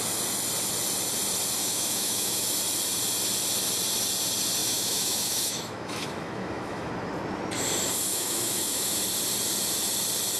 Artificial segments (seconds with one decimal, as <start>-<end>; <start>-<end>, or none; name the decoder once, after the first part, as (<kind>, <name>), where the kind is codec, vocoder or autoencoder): 1.6-2.4 (autoencoder, DAC-VAE); 4.6-6.9; 8.1-9.0